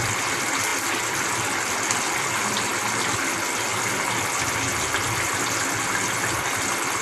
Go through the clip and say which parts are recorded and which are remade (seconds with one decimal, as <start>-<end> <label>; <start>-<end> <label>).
0.0-7.0 recorded